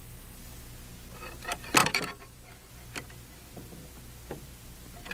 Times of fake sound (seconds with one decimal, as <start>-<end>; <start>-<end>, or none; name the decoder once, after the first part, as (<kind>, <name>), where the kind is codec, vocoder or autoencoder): 0.0-0.6 (vocoder, BigVGAN v2); 1.8-2.7